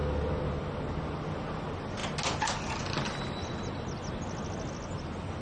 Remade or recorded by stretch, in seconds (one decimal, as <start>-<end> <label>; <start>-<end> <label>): 0.0-5.4 recorded